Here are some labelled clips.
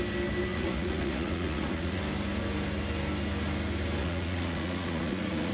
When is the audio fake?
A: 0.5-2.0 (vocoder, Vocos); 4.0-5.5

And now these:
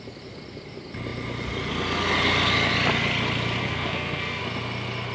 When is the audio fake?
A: 3.6-4.4 (codec, SNAC)

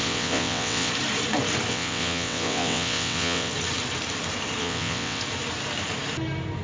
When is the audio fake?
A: 0.0-0.9 (vocoder, WaveNeXt); 1.7-3.5; 4.6-5.2

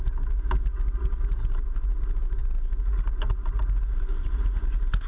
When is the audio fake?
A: none